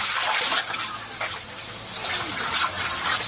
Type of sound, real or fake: real